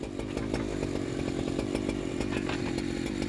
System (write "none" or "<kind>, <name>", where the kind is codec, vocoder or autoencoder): none